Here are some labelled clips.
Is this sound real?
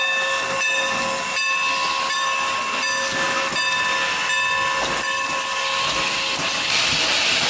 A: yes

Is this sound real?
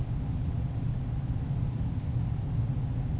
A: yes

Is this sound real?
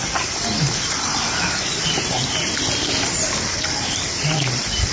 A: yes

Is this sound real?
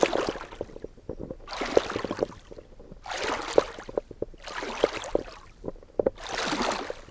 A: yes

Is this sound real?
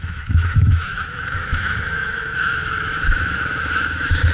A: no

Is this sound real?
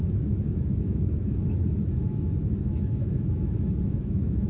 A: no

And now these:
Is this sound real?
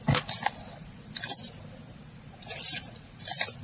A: yes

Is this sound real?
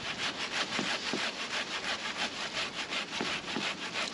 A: yes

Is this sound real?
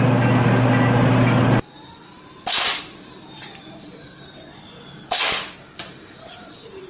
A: no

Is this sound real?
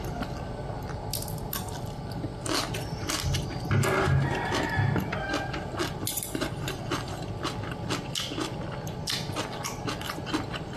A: yes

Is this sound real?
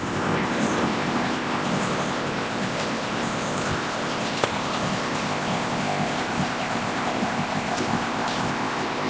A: no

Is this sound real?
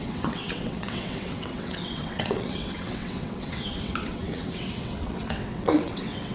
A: no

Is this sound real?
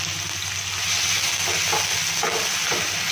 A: yes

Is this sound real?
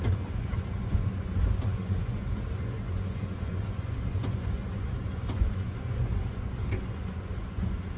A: no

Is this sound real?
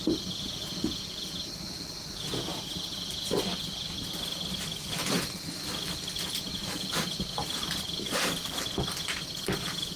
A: yes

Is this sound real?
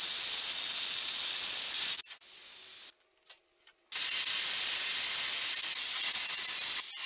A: yes